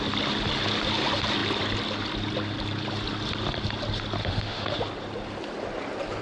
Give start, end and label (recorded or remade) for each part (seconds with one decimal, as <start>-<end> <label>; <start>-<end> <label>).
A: 0.0-4.2 recorded; 4.2-4.8 remade; 4.8-6.2 recorded